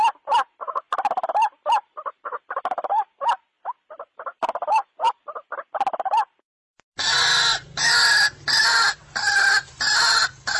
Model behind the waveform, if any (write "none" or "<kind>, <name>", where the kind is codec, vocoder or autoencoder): none